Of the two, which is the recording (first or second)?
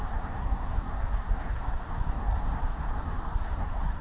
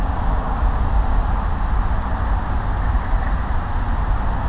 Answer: second